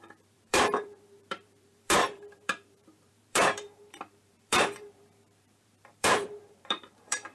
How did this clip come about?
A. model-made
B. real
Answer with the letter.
A